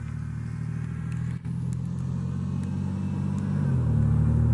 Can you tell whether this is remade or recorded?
recorded